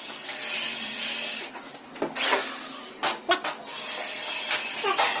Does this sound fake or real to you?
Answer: real